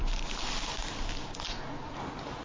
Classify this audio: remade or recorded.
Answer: recorded